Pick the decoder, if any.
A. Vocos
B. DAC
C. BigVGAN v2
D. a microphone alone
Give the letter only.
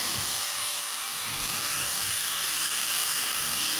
B